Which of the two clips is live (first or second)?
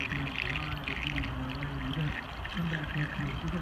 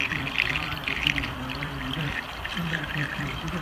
first